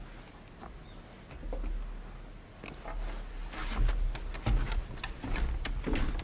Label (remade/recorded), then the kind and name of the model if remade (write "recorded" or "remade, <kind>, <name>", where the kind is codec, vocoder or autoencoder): recorded